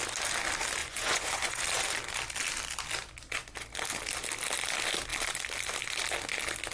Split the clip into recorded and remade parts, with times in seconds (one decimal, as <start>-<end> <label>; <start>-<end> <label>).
0.0-0.8 recorded; 0.8-1.6 remade; 1.6-6.7 recorded